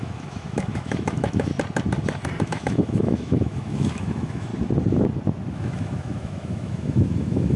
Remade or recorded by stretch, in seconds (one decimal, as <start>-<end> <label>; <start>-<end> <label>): 0.0-1.5 remade; 1.5-2.4 recorded; 2.4-4.5 remade; 4.5-5.5 recorded; 5.5-7.6 remade